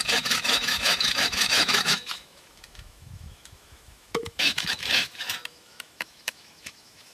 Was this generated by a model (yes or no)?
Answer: yes